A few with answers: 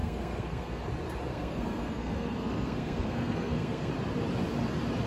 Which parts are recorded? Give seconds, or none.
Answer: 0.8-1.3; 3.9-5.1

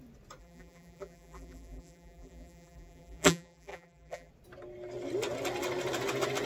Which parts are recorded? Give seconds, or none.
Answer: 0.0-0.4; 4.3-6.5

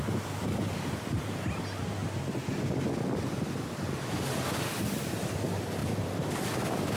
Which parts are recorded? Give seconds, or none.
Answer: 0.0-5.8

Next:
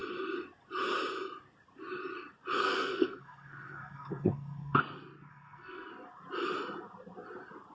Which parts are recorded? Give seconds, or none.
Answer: 0.0-2.6; 4.8-5.3; 5.9-7.7

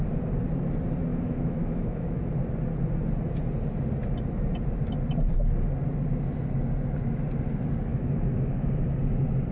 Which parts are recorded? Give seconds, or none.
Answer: 0.0-1.1; 2.3-7.9; 8.7-9.5